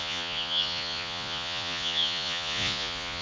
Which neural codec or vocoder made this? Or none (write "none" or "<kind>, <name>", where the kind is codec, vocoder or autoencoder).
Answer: vocoder, Vocos